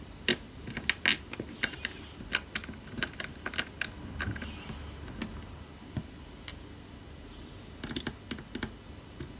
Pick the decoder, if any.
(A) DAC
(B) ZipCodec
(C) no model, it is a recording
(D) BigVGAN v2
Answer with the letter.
C